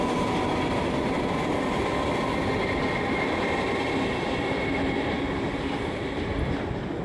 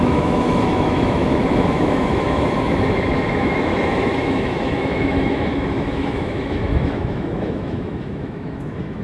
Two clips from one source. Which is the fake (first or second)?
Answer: second